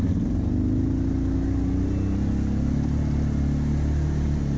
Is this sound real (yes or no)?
yes